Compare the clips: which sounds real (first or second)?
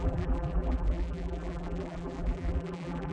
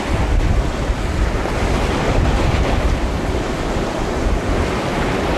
second